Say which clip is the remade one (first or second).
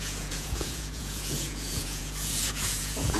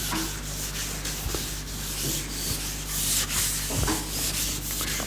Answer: first